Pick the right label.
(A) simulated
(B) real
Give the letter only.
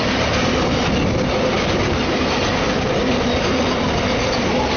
B